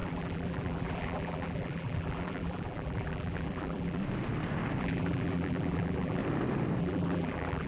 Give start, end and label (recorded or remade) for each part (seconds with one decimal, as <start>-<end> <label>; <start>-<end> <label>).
0.0-4.0 remade; 4.0-4.8 recorded; 4.8-6.2 remade; 6.2-6.8 recorded; 6.8-7.7 remade